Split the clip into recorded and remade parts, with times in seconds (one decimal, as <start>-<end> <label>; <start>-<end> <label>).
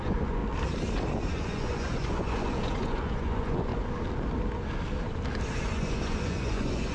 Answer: 0.0-0.4 remade; 0.4-1.3 recorded; 1.3-3.7 remade; 3.7-5.6 recorded; 5.6-6.9 remade